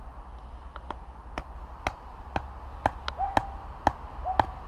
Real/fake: real